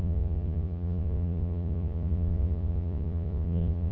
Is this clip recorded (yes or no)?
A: no